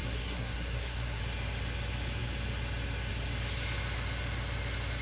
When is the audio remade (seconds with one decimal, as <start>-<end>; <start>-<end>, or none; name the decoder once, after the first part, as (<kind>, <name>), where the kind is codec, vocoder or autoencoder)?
0.0-1.2 (codec, SNAC)